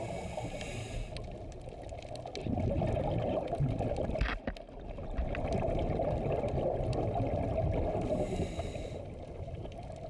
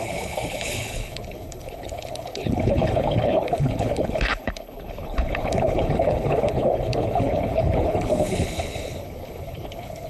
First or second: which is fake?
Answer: second